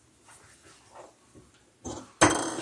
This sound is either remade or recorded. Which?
recorded